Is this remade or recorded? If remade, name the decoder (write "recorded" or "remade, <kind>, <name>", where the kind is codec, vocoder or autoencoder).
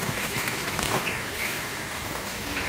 remade, codec, DAC